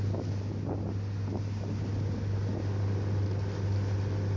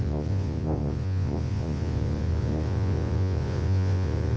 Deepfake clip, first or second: second